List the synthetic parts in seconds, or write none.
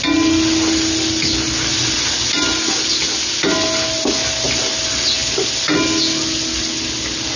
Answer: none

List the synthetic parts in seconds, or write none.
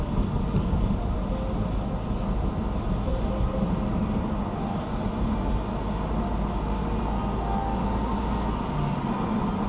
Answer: none